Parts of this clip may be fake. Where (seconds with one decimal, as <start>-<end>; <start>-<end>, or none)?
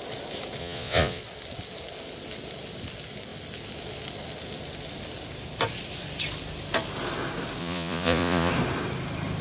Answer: 0.6-1.2; 7.6-8.5